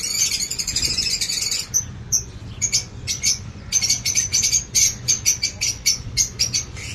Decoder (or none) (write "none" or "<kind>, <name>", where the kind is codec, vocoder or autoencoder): vocoder, Vocos